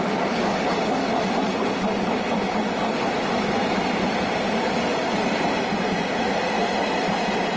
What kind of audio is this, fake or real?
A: real